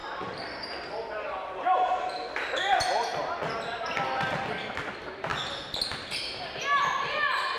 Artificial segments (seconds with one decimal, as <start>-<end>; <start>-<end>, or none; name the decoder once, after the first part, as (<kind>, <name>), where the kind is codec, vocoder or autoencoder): none

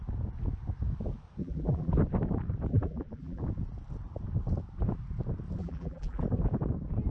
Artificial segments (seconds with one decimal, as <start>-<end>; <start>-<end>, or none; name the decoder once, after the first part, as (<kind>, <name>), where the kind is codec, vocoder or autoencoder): 1.4-1.9 (vocoder, BigVGAN v2); 2.7-3.4; 5.6-6.2

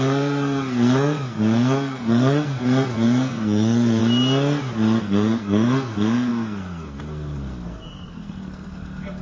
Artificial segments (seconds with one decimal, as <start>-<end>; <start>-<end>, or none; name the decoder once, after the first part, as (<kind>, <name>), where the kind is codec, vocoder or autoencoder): 0.0-4.0 (codec, SNAC); 5.0-9.2